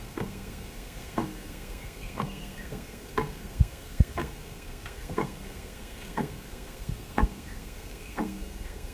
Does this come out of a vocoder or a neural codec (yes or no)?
yes